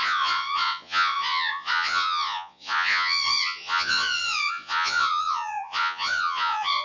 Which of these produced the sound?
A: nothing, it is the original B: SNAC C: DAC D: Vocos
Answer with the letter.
D